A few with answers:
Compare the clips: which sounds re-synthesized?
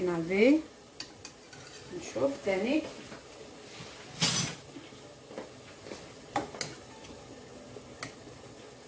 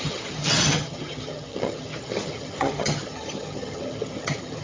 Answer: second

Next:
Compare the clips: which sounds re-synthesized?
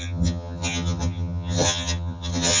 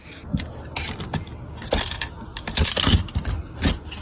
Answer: first